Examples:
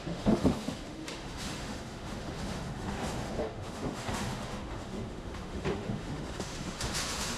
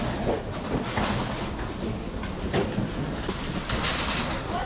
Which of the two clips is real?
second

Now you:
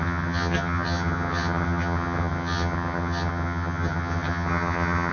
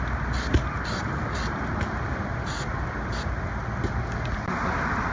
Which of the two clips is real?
second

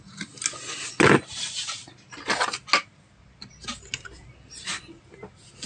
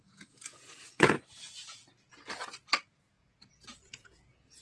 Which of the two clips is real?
first